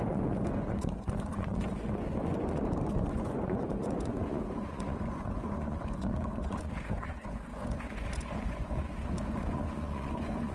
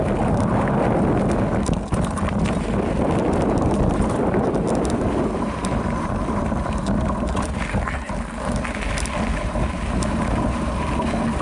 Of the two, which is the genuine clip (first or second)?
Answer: second